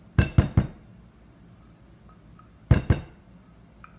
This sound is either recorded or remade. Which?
recorded